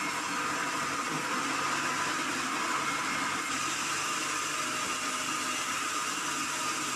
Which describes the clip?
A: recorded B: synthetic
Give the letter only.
A